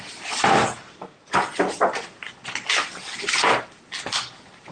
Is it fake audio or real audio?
real